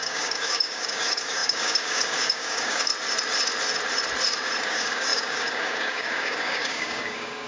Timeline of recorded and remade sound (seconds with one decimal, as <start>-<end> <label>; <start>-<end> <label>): 0.0-2.9 remade; 2.9-4.6 recorded; 4.6-7.5 remade